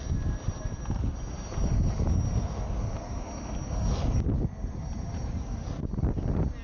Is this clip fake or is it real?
real